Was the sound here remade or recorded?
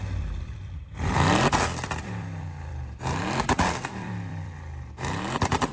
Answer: remade